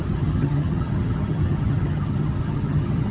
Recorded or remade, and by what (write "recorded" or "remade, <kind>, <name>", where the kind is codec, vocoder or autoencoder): remade, vocoder, HiFi-GAN